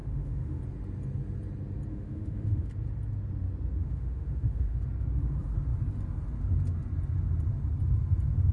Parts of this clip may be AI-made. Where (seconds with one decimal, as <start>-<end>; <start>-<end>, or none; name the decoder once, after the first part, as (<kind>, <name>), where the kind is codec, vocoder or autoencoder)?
0.0-0.6 (autoencoder, DAC-VAE); 1.9-2.7; 3.8-4.8